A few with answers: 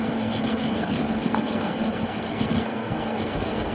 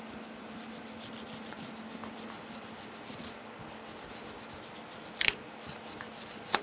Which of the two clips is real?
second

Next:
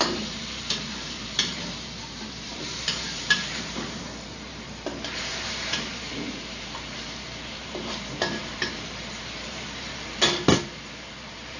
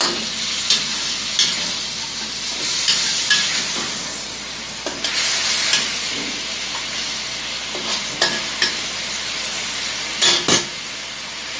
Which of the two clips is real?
second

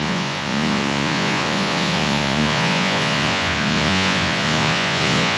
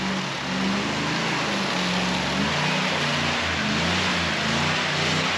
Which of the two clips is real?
second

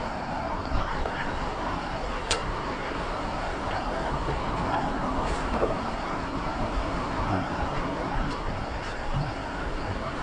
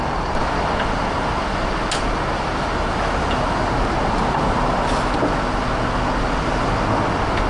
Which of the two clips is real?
second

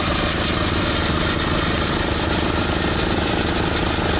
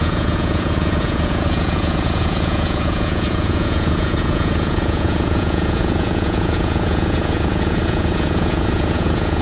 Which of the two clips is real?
first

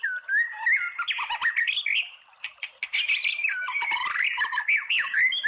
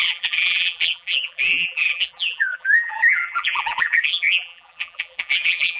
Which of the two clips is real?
first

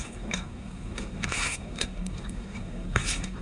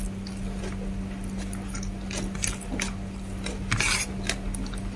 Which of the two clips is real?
second